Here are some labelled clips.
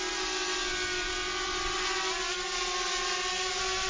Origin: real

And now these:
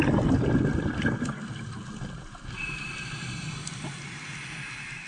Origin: real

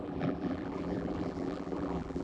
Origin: fake